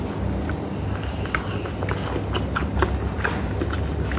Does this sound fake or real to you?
real